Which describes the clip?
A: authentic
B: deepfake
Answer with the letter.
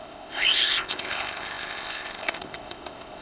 B